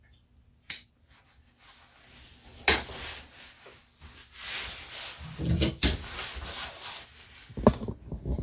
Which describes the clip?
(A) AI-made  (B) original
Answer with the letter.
B